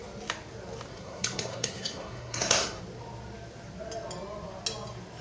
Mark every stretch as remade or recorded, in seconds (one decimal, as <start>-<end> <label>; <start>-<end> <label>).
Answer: 0.0-0.9 recorded; 0.9-2.8 remade; 2.8-5.2 recorded

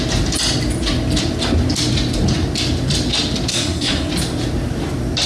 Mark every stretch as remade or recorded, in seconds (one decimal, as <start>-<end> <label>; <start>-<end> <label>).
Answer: 0.0-3.5 recorded; 3.5-4.1 remade; 4.1-5.3 recorded